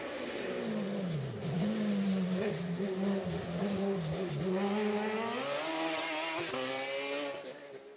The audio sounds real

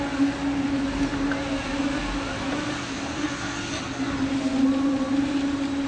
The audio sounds real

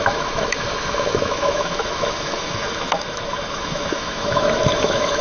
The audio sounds fake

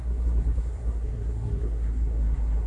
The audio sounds fake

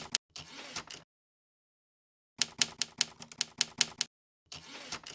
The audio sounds real